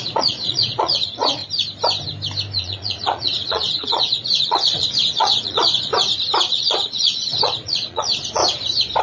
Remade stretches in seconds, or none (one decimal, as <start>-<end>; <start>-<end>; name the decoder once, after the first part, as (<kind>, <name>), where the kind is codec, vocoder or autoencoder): 0.0-1.4 (vocoder, Vocos); 2.6-5.9; 6.5-8.4